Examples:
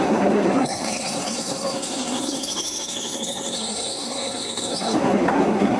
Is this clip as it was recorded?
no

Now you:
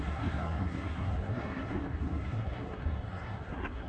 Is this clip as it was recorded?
no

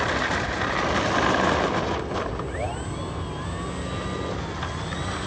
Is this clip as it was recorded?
yes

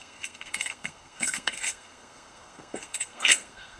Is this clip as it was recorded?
no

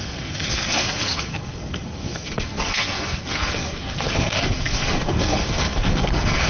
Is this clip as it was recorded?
no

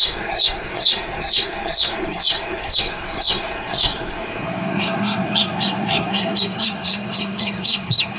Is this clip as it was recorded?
no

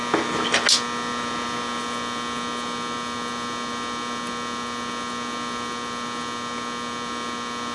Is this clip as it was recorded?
yes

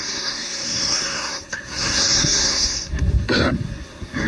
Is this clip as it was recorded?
no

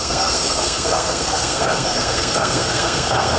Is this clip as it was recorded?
no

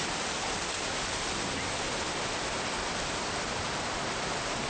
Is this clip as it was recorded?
yes